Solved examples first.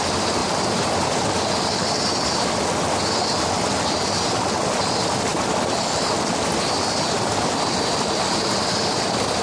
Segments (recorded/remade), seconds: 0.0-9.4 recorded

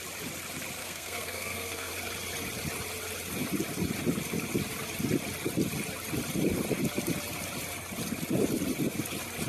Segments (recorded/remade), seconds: 0.0-0.8 recorded; 0.8-1.9 remade; 1.9-9.5 recorded